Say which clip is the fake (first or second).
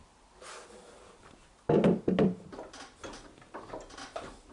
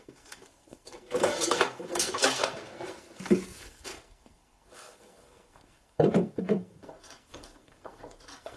second